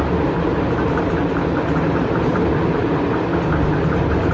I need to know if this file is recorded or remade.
recorded